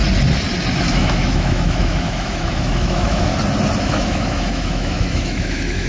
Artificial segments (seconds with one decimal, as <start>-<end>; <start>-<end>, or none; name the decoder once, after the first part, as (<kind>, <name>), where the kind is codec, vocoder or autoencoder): 0.8-3.3 (autoencoder, DAC-VAE); 3.8-5.9